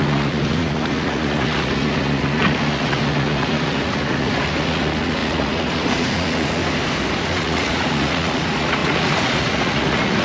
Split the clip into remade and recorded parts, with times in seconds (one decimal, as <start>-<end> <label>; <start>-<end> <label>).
0.0-6.6 remade; 6.6-7.2 recorded; 7.2-10.2 remade